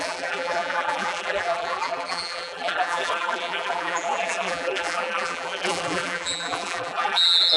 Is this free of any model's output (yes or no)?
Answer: no